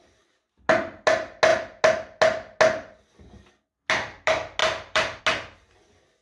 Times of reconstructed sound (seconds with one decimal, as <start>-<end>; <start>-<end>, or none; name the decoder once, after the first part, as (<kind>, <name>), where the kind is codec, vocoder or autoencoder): 4.6-5.2 (vocoder, BigVGAN v2)